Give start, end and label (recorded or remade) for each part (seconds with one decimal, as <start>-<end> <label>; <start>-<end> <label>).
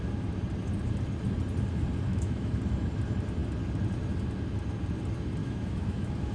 0.0-2.1 recorded; 2.1-2.6 remade; 2.6-5.4 recorded; 5.4-6.3 remade